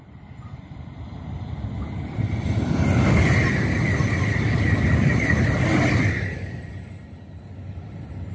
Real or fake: real